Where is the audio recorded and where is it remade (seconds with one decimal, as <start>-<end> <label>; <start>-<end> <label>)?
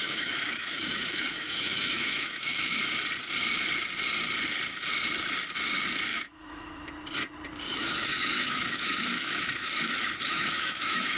0.0-2.8 remade; 2.8-6.1 recorded; 6.1-6.9 remade; 6.9-7.7 recorded; 7.7-11.2 remade